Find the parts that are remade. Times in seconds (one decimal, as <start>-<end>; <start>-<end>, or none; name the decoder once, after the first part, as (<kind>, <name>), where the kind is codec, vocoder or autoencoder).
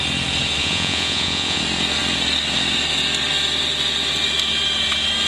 0.6-1.6 (vocoder, Vocos)